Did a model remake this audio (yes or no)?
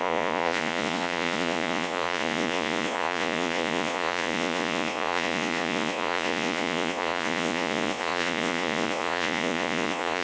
yes